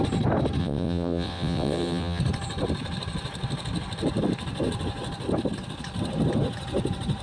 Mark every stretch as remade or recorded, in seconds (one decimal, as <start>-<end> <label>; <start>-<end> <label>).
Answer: 0.0-0.6 recorded; 0.6-2.2 remade; 2.2-7.2 recorded